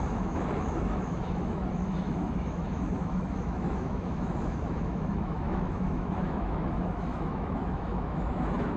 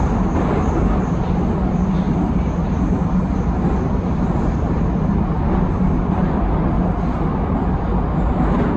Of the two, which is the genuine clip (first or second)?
second